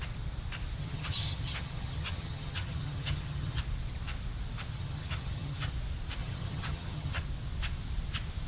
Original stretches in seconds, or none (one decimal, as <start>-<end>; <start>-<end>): 0.0-0.8; 3.6-4.7; 5.7-6.2; 7.2-8.5